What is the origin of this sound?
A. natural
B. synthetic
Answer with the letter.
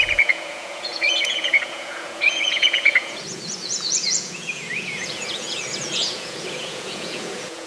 B